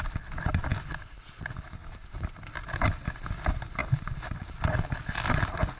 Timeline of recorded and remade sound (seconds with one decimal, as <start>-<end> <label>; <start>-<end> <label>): 0.0-5.8 recorded